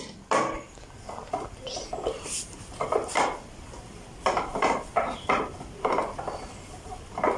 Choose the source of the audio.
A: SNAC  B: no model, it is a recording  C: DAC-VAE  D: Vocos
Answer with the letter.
B